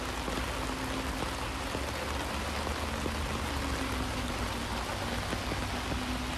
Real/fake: real